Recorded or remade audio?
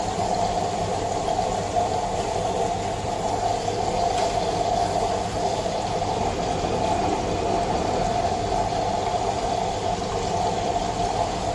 remade